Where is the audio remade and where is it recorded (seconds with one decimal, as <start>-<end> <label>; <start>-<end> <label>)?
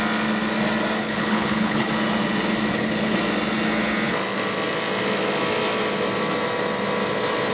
0.0-1.0 recorded; 1.0-1.9 remade; 1.9-2.7 recorded; 2.7-3.2 remade; 3.2-7.5 recorded